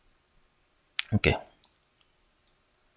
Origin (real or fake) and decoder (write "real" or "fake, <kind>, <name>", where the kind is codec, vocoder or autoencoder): real